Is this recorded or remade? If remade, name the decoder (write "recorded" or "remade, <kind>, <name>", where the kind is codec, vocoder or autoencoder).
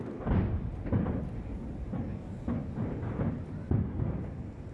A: recorded